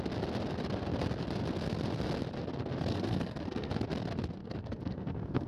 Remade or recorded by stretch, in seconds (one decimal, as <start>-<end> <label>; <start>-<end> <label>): 0.0-2.9 recorded; 2.9-3.7 remade; 3.7-4.4 recorded; 4.4-5.5 remade